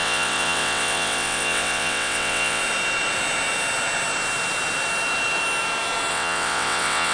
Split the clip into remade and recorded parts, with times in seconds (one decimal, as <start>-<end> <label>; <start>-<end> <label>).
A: 0.0-2.6 remade; 2.6-6.1 recorded; 6.1-7.1 remade